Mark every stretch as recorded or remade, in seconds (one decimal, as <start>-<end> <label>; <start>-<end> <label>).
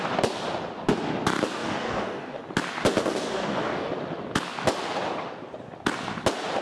0.0-1.6 recorded; 1.6-2.4 remade; 2.4-3.0 recorded; 3.0-3.9 remade; 3.9-6.6 recorded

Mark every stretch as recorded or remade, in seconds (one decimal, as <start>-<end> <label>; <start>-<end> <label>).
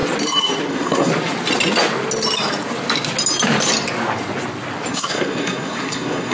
0.0-0.7 recorded; 0.7-1.1 remade; 1.1-4.9 recorded; 4.9-6.3 remade